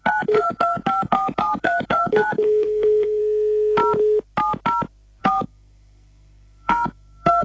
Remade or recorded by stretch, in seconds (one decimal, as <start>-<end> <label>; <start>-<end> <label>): 0.0-3.2 remade; 3.2-5.2 recorded; 5.2-7.4 remade